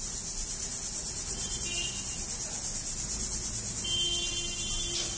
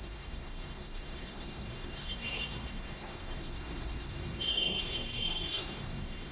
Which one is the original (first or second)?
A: first